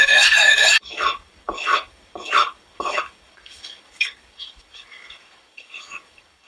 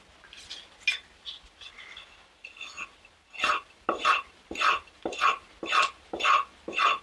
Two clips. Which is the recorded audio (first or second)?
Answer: second